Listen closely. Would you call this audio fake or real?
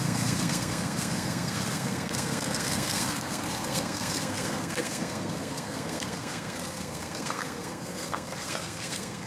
fake